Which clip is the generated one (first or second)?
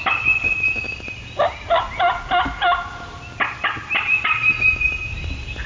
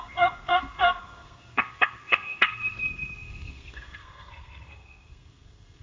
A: second